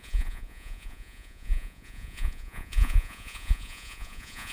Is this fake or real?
fake